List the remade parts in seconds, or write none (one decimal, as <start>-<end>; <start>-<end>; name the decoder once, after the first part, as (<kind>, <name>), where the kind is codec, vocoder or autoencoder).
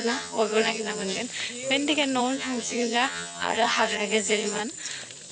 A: 0.0-1.2 (vocoder, HiFi-GAN); 2.2-4.6